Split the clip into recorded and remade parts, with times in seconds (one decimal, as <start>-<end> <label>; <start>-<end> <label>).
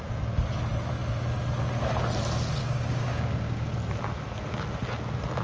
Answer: 0.0-2.6 recorded; 2.6-3.7 remade; 3.7-5.4 recorded